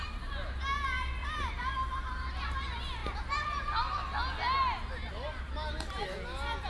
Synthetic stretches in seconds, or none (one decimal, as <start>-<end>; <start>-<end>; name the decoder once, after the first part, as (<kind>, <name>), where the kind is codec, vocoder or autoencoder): 1.2-2.3 (vocoder, BigVGAN v2)